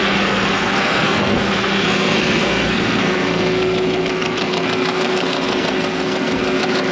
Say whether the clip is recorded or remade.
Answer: remade